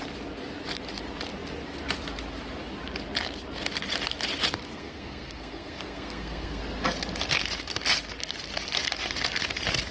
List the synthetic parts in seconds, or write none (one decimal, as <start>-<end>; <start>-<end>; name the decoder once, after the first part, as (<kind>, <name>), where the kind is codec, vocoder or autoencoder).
4.7-6.6 (codec, SNAC)